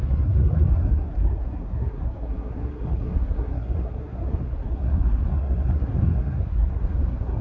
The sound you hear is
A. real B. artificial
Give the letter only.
B